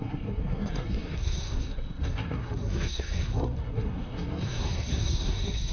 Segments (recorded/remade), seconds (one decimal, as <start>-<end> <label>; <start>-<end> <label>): 0.0-5.7 remade